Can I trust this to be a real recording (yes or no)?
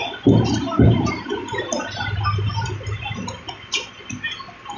yes